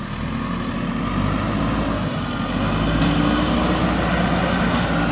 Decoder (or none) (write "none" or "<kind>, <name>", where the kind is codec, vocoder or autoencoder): none